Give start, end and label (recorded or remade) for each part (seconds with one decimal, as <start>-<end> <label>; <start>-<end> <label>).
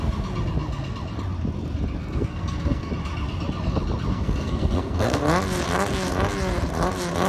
0.0-2.0 recorded; 2.0-2.9 remade; 2.9-4.1 recorded; 4.1-5.2 remade; 5.2-7.3 recorded